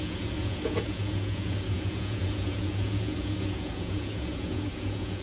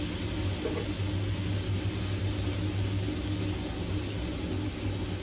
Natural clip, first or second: second